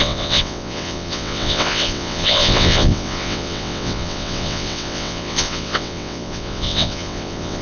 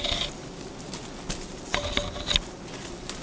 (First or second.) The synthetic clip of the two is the first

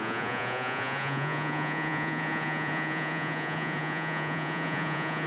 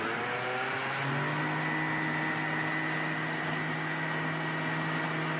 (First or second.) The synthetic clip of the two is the first